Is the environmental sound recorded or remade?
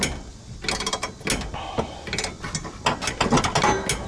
recorded